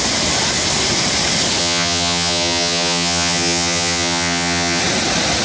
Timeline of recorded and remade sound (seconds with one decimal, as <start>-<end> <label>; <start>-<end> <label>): 0.0-1.6 recorded; 1.6-4.8 remade; 4.8-5.4 recorded